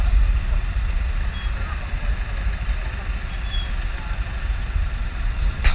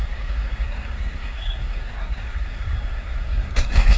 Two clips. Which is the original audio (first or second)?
first